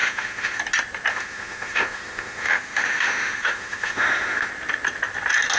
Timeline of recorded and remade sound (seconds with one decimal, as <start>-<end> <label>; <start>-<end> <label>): 0.0-0.6 remade; 0.6-1.1 recorded; 1.1-4.5 remade; 4.5-5.6 recorded